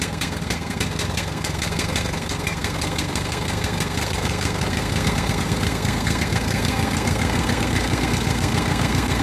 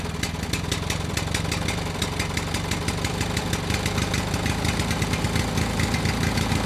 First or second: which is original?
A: second